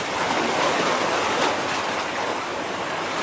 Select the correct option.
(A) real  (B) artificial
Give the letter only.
A